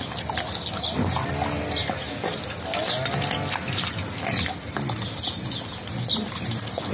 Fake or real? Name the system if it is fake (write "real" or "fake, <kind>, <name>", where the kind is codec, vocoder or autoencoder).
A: real